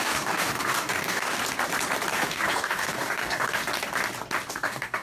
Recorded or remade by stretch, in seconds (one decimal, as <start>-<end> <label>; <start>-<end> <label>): 0.0-1.4 remade; 1.4-2.1 recorded; 2.1-3.6 remade; 3.6-4.5 recorded; 4.5-5.0 remade